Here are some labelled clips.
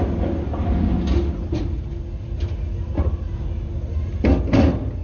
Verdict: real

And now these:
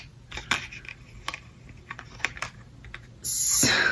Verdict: real